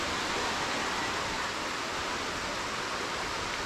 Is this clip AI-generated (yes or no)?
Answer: no